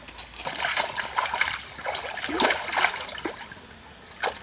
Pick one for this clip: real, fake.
real